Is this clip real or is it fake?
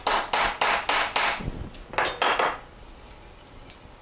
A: real